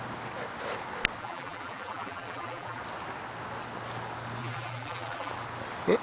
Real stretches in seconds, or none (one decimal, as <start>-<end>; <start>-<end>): 0.0-1.2; 2.8-4.4; 5.3-6.0